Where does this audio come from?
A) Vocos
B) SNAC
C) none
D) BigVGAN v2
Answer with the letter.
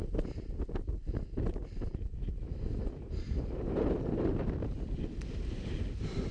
D